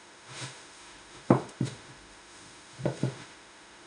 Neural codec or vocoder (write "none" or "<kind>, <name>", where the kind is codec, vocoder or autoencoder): autoencoder, DAC-VAE